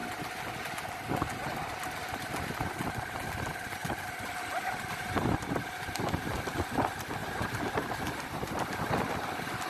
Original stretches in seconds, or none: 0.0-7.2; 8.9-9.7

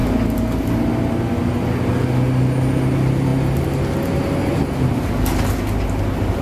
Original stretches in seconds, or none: 0.0-6.4

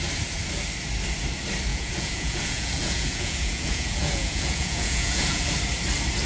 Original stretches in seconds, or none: 0.0-1.7; 5.5-6.3